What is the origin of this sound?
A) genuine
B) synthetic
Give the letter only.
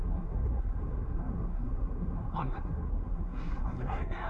B